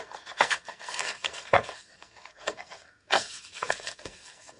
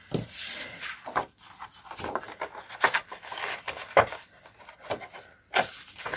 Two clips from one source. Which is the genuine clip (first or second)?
second